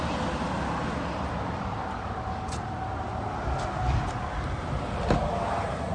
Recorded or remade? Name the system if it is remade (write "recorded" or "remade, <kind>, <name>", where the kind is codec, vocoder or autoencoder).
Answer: recorded